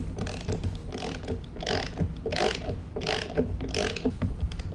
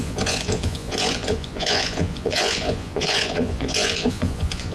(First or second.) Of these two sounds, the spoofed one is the second